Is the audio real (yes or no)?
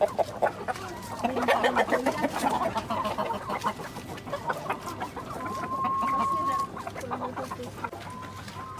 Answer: yes